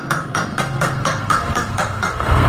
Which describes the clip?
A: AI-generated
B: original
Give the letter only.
A